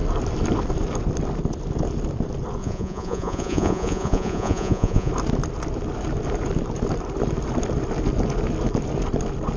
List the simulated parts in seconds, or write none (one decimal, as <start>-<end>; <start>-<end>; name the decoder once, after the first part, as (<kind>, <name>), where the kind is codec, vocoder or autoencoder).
2.6-5.1 (vocoder, Vocos)